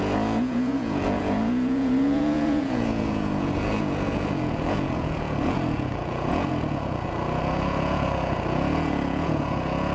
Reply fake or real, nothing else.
fake